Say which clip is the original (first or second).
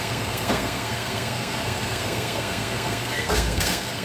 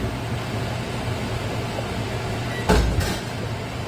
second